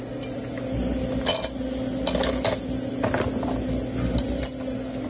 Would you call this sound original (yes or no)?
yes